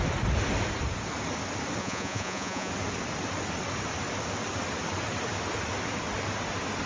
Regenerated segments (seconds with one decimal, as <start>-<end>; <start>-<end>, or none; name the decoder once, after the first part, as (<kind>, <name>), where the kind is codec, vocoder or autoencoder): 1.8-2.7 (vocoder, Vocos)